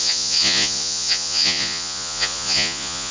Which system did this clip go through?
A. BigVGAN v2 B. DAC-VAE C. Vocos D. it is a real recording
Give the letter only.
C